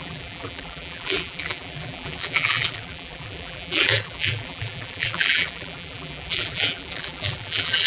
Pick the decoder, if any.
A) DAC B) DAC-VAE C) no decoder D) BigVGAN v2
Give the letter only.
D